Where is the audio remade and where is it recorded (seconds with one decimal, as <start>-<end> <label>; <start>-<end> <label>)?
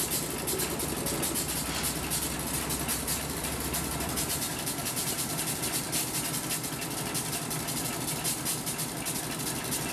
0.0-2.9 recorded; 2.9-5.4 remade; 5.4-9.9 recorded